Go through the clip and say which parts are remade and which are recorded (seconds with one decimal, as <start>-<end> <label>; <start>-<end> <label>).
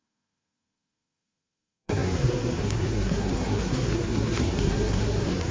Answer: 0.0-5.5 remade